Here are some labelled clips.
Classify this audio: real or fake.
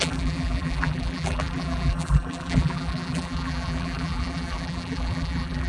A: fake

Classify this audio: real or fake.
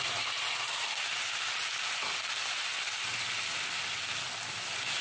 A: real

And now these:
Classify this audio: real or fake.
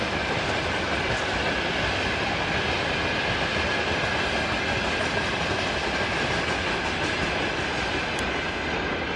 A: real